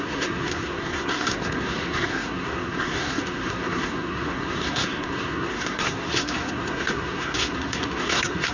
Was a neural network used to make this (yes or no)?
yes